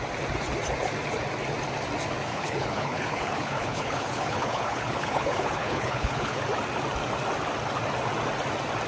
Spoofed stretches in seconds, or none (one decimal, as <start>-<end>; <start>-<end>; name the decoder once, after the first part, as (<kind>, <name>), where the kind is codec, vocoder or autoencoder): 2.3-6.4 (codec, HILCodec)